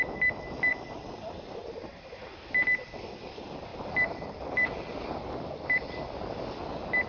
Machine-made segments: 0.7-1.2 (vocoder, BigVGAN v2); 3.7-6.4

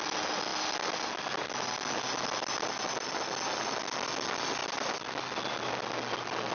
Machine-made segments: 4.6-5.1 (vocoder, BigVGAN v2)

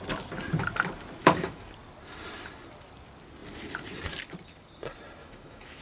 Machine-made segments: 1.2-1.7 (autoencoder, DAC-VAE); 5.2-5.8

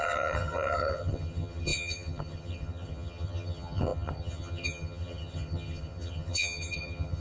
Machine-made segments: 0.0-7.2 (vocoder, HiFi-GAN)

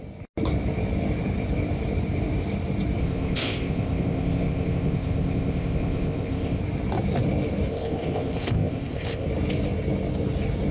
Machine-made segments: 3.0-6.6 (codec, ZipCodec); 7.7-9.3